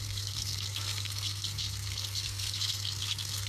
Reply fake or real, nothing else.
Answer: fake